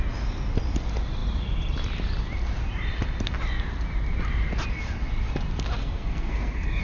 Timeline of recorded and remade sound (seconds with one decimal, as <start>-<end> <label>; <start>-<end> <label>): 0.0-5.8 recorded; 5.8-6.8 remade